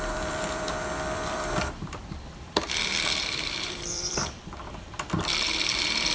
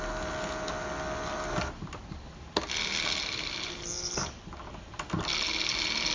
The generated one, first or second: first